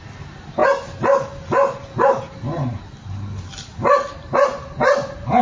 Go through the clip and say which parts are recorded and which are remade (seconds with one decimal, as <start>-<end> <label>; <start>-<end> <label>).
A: 0.0-5.4 recorded